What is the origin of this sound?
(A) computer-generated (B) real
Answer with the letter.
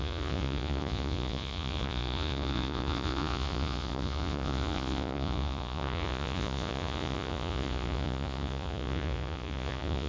A